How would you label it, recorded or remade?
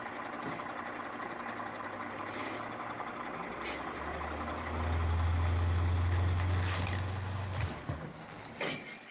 recorded